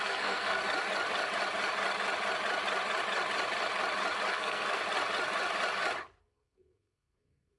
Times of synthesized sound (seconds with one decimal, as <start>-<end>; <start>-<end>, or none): 0.0-0.6; 4.3-4.8; 6.2-7.6